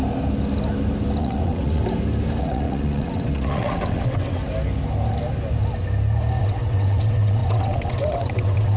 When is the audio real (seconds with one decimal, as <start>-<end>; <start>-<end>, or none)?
0.0-1.2; 1.8-2.4; 4.4-6.4